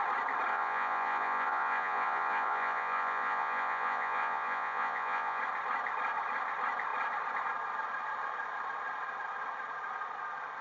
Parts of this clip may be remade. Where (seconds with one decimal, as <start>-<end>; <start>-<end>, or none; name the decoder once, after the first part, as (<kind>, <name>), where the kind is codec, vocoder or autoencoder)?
0.5-5.4 (vocoder, Vocos)